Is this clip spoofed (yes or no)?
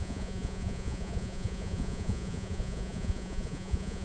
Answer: yes